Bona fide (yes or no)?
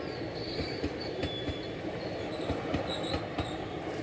yes